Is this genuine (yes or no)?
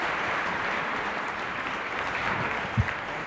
yes